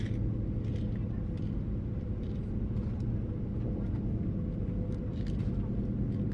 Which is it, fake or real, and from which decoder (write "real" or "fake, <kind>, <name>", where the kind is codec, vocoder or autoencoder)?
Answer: real